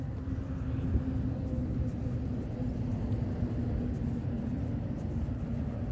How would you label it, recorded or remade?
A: recorded